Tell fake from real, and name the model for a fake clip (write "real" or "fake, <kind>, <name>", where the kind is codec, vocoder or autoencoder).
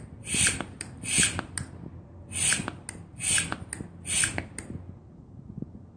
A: real